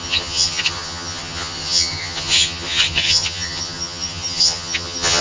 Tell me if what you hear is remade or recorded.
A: remade